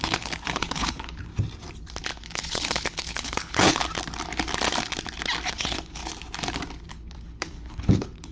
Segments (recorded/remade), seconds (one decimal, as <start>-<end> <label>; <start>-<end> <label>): 0.0-1.3 remade; 1.3-2.1 recorded; 2.1-3.8 remade; 3.8-5.5 recorded; 5.5-6.0 remade; 6.0-6.9 recorded; 6.9-8.3 remade